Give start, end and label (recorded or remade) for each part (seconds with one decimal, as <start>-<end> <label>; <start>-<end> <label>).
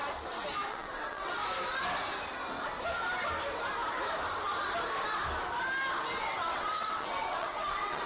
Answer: 0.0-0.7 recorded; 0.7-1.4 remade; 1.4-6.2 recorded; 6.2-8.1 remade